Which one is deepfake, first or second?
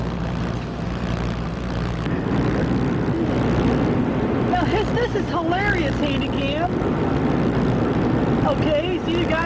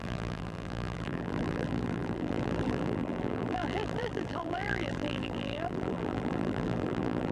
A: second